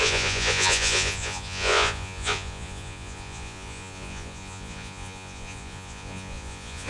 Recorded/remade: remade